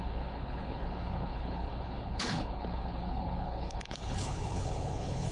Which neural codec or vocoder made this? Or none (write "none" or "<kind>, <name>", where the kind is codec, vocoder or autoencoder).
codec, HILCodec